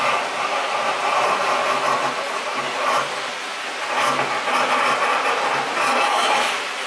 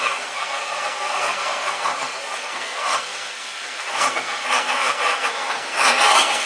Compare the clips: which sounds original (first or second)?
first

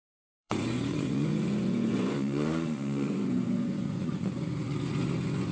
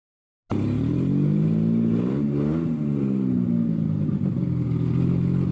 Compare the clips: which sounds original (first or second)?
second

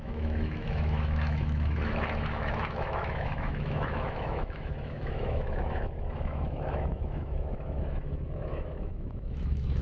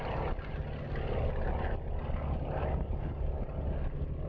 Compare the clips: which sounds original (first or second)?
second